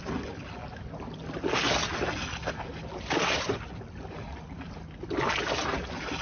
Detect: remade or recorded recorded